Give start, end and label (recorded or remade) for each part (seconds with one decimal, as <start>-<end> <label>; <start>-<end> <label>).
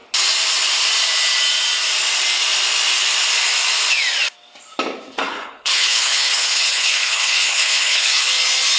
0.0-5.3 recorded; 5.3-8.2 remade; 8.2-8.8 recorded